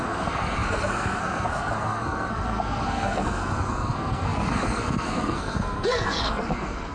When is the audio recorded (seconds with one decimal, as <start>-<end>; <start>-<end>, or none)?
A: none